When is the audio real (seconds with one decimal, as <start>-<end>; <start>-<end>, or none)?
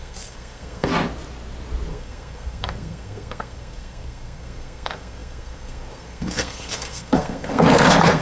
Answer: 0.9-1.9